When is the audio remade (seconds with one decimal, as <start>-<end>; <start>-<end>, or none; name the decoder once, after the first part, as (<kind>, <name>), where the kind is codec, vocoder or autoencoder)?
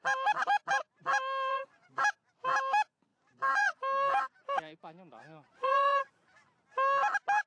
1.5-2.0 (vocoder, Vocos); 3.1-3.8; 5.2-6.5